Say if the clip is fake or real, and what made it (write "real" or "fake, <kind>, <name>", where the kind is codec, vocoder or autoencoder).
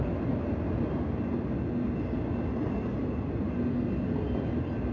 real